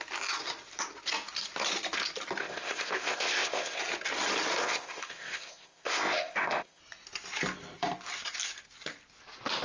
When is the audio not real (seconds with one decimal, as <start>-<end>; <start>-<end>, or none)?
2.4-3.8; 4.6-6.8